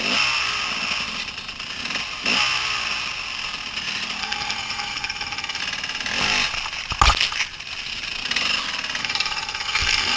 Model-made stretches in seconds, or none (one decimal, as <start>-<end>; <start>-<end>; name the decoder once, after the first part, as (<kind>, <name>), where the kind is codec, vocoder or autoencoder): 4.2-5.6 (codec, SNAC); 9.0-10.2